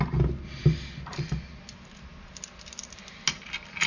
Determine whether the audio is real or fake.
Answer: real